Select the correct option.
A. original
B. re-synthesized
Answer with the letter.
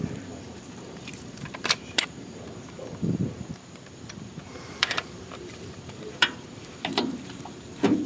B